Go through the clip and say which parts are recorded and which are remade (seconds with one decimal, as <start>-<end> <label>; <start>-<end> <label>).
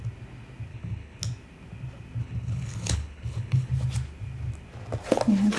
0.0-0.7 recorded; 0.7-1.2 remade; 1.2-2.2 recorded; 2.2-3.7 remade; 3.7-5.6 recorded